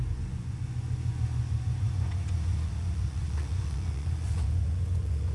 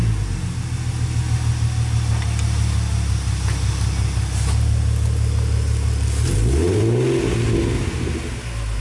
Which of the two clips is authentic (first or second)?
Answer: second